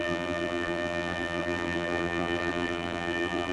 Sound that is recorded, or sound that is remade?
remade